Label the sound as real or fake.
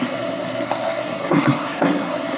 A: fake